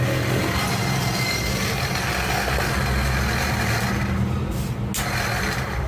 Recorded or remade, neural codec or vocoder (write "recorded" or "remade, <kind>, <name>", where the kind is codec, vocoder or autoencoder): recorded